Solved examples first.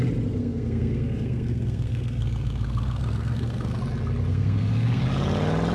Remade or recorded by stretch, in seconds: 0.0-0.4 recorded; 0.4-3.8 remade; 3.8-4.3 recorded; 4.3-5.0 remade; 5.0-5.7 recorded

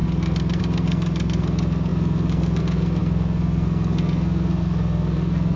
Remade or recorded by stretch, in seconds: 0.0-5.6 remade

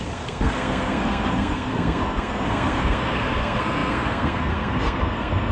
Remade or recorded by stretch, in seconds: 0.0-5.5 remade

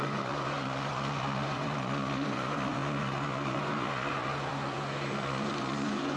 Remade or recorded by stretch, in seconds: 0.0-6.2 remade